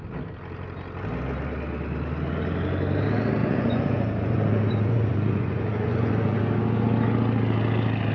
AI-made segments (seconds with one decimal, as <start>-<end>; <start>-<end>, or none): 3.4-6.4